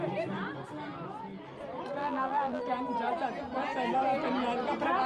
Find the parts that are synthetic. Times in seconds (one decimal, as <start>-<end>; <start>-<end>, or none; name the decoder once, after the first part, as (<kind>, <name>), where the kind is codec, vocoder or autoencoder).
2.0-2.6 (vocoder, BigVGAN v2)